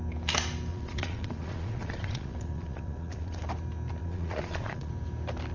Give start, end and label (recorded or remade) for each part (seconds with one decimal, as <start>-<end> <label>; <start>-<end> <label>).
0.0-0.7 recorded; 0.7-3.4 remade; 3.4-4.0 recorded; 4.0-4.9 remade; 4.9-5.5 recorded

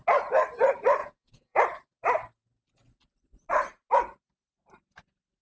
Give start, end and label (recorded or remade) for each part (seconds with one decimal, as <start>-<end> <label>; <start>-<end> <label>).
0.0-1.0 recorded; 1.0-1.6 remade; 1.6-5.4 recorded

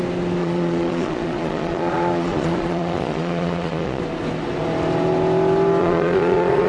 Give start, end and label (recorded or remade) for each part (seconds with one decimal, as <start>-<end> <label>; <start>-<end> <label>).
0.0-0.4 recorded; 0.4-4.0 remade; 4.0-5.8 recorded; 5.8-6.7 remade

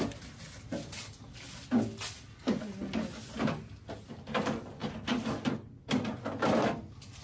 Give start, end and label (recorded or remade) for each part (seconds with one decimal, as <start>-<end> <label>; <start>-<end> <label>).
0.0-7.2 recorded

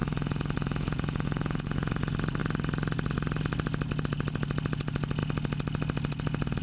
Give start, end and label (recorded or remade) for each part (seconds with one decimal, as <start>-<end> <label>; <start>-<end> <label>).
0.0-1.9 remade; 1.9-6.6 recorded

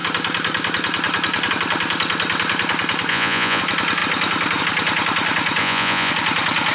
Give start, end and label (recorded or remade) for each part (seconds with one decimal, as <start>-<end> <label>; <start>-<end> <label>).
0.0-3.1 recorded; 3.1-3.6 remade; 3.6-5.6 recorded; 5.6-6.1 remade; 6.1-6.7 recorded

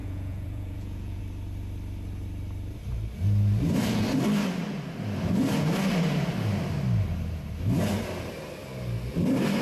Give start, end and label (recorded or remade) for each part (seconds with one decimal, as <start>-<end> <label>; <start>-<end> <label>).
0.0-1.2 remade; 1.2-9.6 recorded

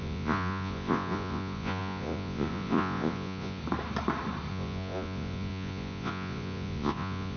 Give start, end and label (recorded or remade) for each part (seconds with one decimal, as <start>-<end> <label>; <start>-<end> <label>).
0.0-3.6 remade; 3.6-4.5 recorded; 4.5-7.4 remade